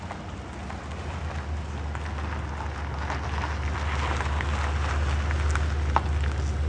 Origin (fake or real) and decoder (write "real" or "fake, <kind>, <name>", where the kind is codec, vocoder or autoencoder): real